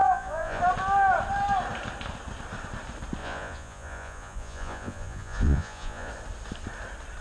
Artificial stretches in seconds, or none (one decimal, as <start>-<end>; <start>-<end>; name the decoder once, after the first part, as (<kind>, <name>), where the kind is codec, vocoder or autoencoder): 0.0-0.6 (vocoder, Vocos); 3.2-6.1